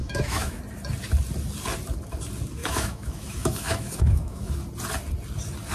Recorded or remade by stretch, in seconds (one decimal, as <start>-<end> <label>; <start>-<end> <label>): 0.0-0.6 remade; 0.6-2.6 recorded; 2.6-4.5 remade; 4.5-5.7 recorded

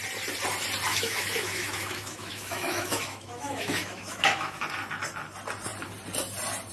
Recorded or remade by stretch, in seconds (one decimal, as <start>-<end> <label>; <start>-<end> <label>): 0.0-0.9 recorded; 0.9-4.6 remade; 4.6-6.7 recorded

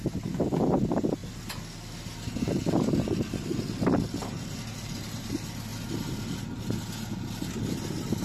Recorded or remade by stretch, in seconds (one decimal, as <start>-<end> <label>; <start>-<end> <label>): 0.0-4.2 recorded; 4.2-5.3 remade; 5.3-8.2 recorded